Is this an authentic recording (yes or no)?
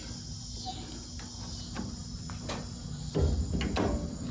yes